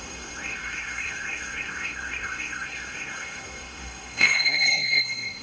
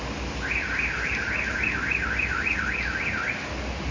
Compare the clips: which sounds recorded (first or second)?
second